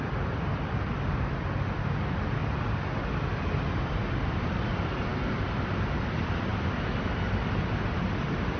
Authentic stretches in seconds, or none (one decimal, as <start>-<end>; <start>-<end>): 0.0-8.6